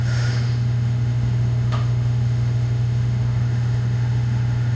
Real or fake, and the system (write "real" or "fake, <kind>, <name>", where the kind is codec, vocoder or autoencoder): fake, autoencoder, DAC-VAE